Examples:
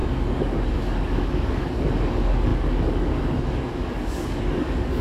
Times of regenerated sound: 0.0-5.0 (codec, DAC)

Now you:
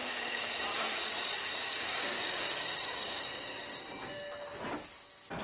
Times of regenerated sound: 0.0-3.2 (codec, DAC)

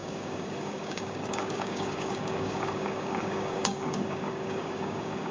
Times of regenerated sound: 0.0-5.3 (codec, DAC)

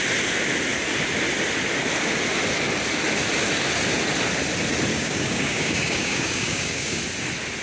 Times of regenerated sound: 4.9-7.0 (codec, DAC)

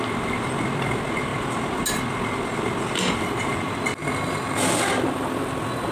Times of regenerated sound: none

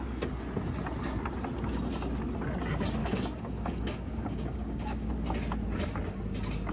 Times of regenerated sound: 3.0-5.1 (codec, DAC)

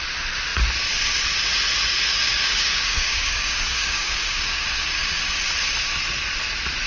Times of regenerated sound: 2.1-5.3 (codec, DAC)

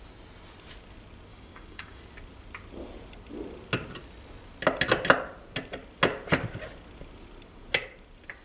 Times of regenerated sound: 1.3-2.0 (codec, DAC)